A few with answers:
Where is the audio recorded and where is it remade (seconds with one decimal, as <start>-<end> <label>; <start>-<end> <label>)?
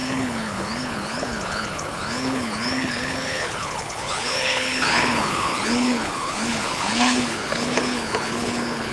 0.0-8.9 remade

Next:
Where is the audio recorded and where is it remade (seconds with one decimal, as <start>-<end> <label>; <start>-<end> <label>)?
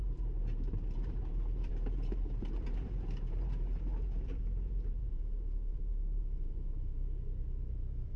0.0-8.2 remade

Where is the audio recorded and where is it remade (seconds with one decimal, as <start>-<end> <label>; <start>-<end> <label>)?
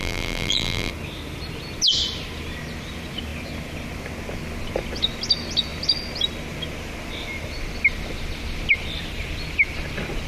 0.0-0.9 remade; 0.9-10.3 recorded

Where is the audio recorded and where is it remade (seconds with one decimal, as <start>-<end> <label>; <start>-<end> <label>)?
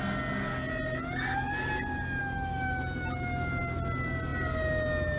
0.0-2.2 recorded; 2.2-2.8 remade; 2.8-5.2 recorded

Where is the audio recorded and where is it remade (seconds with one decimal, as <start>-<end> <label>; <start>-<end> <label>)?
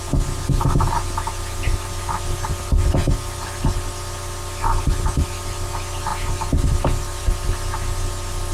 0.0-8.5 recorded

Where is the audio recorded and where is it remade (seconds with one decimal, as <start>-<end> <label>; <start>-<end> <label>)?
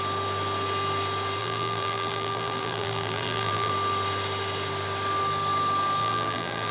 0.0-1.4 recorded; 1.4-3.7 remade; 3.7-6.0 recorded; 6.0-6.7 remade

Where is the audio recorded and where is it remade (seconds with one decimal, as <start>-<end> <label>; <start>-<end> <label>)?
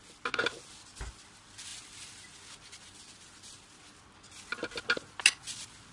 0.0-5.9 recorded